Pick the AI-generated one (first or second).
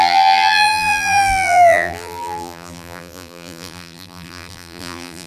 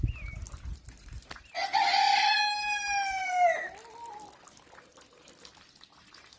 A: first